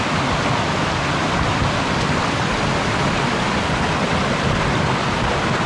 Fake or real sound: real